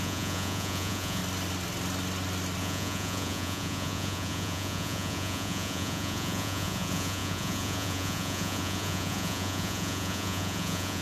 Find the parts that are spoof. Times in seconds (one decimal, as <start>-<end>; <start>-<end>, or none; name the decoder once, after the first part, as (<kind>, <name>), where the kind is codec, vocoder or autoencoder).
0.0-1.2 (vocoder, Vocos); 2.6-11.0